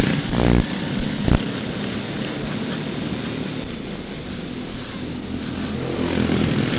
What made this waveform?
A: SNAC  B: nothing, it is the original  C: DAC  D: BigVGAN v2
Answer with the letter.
B